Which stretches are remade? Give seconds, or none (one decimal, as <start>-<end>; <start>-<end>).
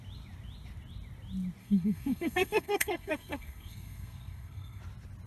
1.6-4.8